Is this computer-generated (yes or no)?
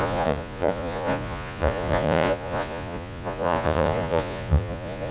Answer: yes